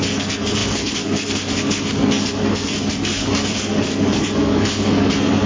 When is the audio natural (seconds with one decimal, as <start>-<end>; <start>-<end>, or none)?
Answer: none